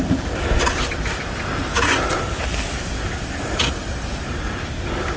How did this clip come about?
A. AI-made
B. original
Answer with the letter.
B